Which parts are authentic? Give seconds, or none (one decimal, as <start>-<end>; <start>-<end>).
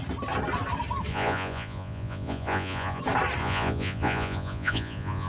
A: 0.0-1.1; 3.0-3.4